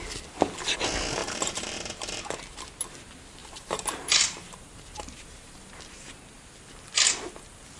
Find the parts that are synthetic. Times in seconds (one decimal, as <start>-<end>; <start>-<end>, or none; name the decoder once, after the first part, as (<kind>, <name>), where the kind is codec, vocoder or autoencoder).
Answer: 1.2-2.2 (vocoder, BigVGAN v2); 3.4-6.2